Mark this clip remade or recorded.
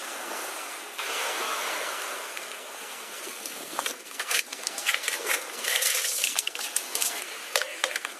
remade